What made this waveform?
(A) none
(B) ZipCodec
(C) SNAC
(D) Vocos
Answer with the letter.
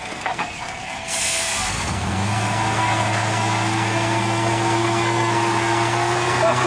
C